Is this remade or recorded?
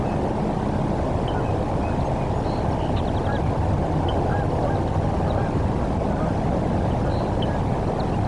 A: recorded